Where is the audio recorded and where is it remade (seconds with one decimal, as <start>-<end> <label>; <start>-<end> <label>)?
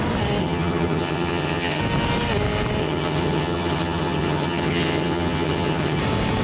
0.0-0.4 recorded; 0.4-1.8 remade; 1.8-2.8 recorded; 2.8-6.0 remade; 6.0-6.4 recorded